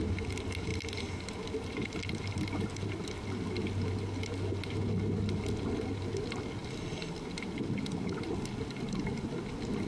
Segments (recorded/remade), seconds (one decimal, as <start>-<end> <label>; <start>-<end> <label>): 0.0-9.9 recorded